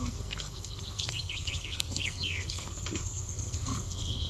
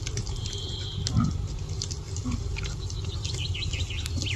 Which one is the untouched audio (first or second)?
second